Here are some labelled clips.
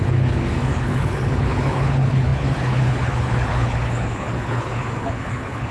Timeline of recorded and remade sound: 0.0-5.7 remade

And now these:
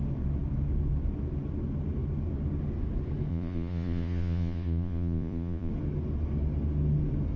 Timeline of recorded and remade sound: 0.0-3.3 recorded; 3.3-5.7 remade; 5.7-7.4 recorded

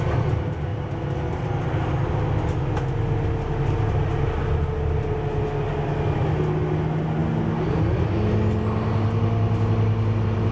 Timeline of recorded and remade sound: 0.0-10.5 recorded

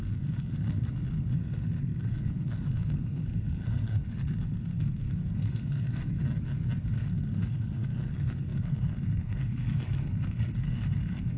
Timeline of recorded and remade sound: 0.0-6.2 remade; 6.2-6.8 recorded; 6.8-11.4 remade

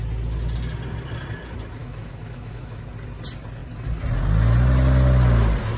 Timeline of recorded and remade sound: 0.0-1.8 recorded; 1.8-2.8 remade; 2.8-5.8 recorded

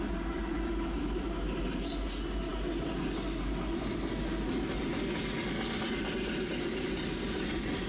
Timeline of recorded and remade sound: 0.0-7.9 recorded